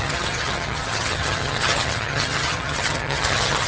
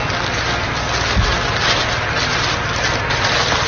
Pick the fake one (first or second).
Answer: first